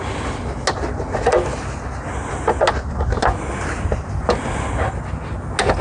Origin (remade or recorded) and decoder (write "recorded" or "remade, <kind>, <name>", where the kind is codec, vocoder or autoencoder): recorded